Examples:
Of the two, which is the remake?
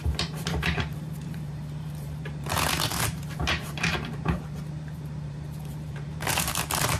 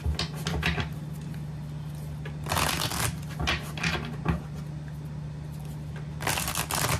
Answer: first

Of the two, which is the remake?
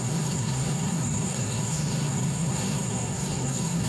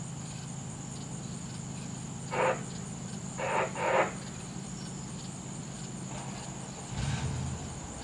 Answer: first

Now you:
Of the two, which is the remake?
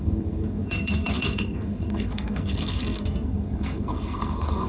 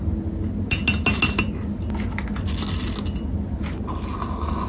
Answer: first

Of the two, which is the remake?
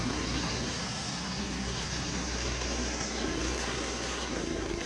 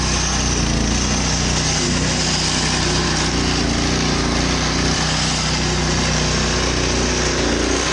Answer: first